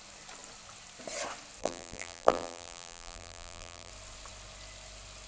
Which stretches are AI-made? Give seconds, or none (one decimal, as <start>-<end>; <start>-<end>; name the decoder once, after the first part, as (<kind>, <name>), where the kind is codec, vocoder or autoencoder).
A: 1.6-3.9 (vocoder, BigVGAN v2)

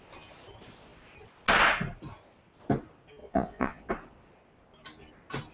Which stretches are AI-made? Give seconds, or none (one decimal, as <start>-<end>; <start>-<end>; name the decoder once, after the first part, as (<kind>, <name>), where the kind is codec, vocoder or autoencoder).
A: 3.2-3.9 (vocoder, Vocos)

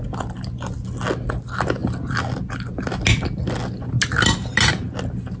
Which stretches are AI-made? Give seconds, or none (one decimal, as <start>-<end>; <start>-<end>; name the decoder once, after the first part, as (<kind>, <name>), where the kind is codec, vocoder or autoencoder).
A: none